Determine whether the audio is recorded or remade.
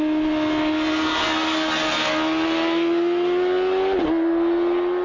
recorded